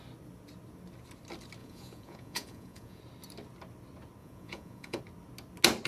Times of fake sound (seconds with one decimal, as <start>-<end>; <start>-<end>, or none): 1.6-3.0; 4.2-5.0

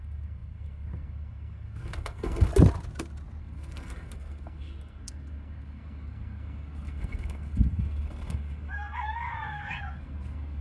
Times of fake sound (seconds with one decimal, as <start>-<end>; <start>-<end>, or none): 0.0-2.5; 3.4-10.6

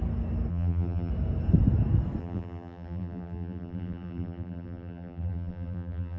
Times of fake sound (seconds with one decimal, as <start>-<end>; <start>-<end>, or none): 0.5-1.1; 2.2-6.2

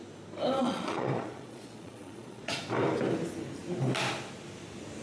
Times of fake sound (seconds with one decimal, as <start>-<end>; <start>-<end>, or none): 0.6-2.5

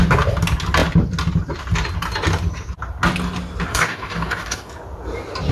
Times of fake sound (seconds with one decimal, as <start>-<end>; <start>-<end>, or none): 3.7-4.7

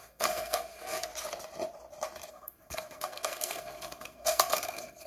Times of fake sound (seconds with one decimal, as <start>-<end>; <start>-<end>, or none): 0.0-1.1; 2.3-5.1